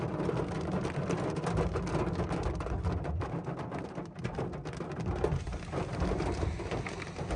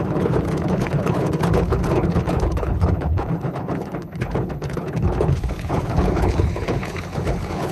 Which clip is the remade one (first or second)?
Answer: second